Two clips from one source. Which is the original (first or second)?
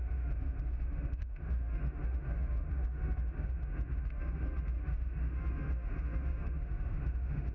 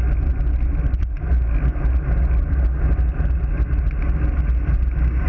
second